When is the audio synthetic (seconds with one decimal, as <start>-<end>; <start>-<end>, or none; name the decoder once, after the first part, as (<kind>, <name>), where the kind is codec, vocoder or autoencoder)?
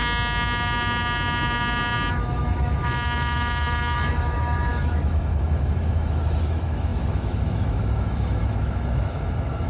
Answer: 2.1-9.7 (autoencoder, DAC-VAE)